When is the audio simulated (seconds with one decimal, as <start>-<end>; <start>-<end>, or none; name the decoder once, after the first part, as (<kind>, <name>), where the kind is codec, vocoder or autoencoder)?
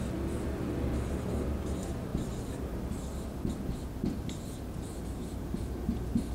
none